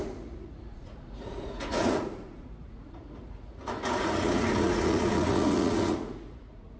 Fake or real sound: fake